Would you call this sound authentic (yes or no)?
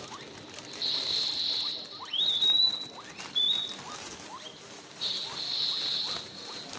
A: yes